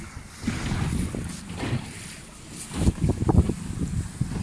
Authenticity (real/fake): real